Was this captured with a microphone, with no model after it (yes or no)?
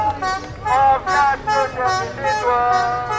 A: yes